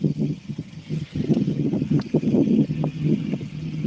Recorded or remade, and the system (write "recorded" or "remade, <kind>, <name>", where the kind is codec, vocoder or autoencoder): remade, vocoder, HiFi-GAN